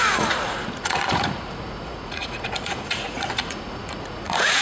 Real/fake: fake